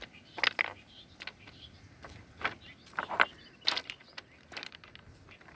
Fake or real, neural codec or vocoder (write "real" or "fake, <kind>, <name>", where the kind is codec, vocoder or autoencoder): real